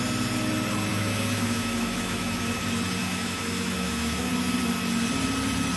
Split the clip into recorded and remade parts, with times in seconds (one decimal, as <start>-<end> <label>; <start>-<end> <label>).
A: 0.0-0.9 recorded; 0.9-2.6 remade; 2.6-3.0 recorded; 3.0-4.3 remade; 4.3-5.8 recorded

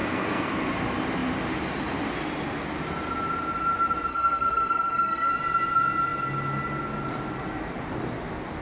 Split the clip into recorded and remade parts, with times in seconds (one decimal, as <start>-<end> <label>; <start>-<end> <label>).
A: 0.0-0.6 remade; 0.6-4.1 recorded; 4.1-5.3 remade; 5.3-8.6 recorded